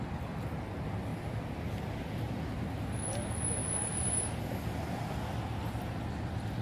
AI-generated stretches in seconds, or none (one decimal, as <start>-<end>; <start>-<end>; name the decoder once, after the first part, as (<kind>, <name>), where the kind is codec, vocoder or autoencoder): 3.6-4.3 (vocoder, BigVGAN v2)